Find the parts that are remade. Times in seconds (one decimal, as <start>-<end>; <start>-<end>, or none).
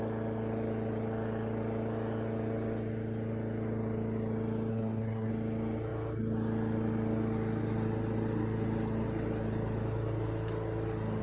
4.7-5.3